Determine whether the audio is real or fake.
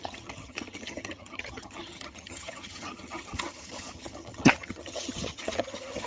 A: fake